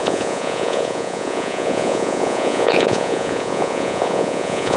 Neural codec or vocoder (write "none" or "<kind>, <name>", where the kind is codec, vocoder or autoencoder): vocoder, Vocos